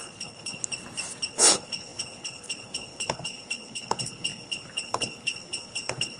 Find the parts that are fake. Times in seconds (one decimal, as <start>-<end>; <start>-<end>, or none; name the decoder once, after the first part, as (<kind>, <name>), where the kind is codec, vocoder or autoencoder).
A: 0.0-0.6 (codec, HILCodec); 1.3-6.2

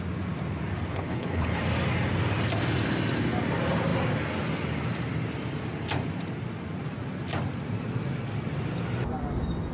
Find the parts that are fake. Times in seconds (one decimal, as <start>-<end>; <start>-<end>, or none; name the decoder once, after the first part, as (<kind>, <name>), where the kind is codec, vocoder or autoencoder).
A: 0.9-1.6 (codec, HILCodec)